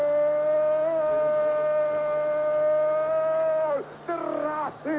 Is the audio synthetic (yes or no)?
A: no